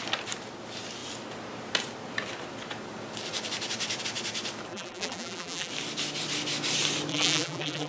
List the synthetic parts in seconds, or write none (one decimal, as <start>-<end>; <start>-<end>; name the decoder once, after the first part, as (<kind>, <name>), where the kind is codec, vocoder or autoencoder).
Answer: 4.7-5.7 (vocoder, BigVGAN v2); 7.1-7.9